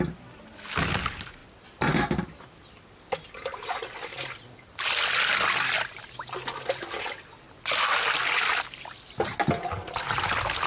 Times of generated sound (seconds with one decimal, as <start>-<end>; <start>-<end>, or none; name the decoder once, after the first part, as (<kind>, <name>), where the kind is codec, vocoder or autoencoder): none